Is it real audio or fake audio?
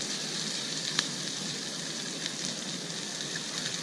fake